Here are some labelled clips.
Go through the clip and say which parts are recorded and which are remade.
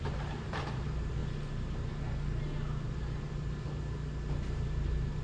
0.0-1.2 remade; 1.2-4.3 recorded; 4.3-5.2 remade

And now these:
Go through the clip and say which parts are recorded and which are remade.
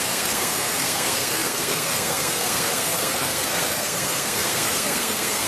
0.0-5.5 remade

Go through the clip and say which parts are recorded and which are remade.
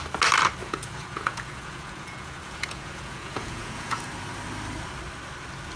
0.0-0.6 recorded; 0.6-4.1 remade; 4.1-5.8 recorded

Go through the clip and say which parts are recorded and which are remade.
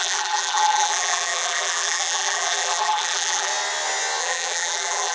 0.0-3.5 remade; 3.5-4.2 recorded; 4.2-5.1 remade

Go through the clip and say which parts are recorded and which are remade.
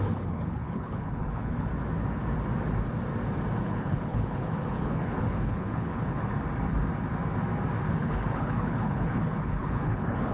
0.0-1.7 remade; 1.7-3.6 recorded; 3.6-6.3 remade; 6.3-7.9 recorded; 7.9-10.3 remade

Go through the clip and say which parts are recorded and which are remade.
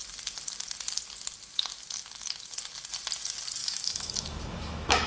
0.0-3.6 recorded; 3.6-5.1 remade